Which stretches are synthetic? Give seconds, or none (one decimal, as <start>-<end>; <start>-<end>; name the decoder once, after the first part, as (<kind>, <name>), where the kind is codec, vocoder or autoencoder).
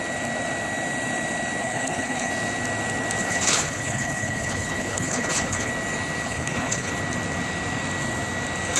1.6-2.3 (codec, HILCodec); 3.2-5.7; 6.2-6.9